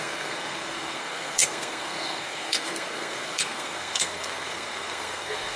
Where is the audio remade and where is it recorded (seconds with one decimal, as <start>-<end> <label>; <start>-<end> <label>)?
0.0-5.6 remade